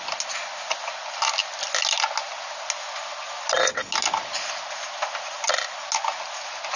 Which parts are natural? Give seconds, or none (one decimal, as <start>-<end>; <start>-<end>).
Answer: 0.0-6.8